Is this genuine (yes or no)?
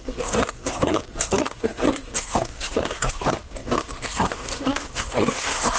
no